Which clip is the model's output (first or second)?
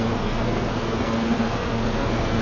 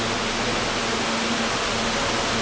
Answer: first